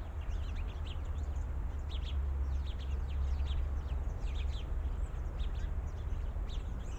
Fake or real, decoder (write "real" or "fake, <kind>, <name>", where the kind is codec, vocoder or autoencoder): real